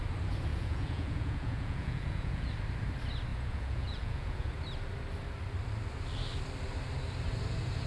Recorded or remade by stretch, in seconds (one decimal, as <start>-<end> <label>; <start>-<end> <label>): 0.0-0.5 recorded; 0.5-2.5 remade; 2.5-3.3 recorded; 3.3-4.5 remade; 4.5-7.9 recorded